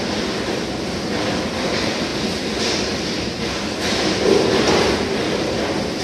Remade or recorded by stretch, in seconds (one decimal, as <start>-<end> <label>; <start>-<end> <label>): 0.0-6.0 recorded